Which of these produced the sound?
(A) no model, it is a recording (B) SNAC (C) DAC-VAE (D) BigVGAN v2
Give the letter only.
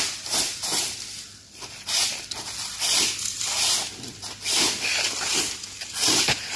D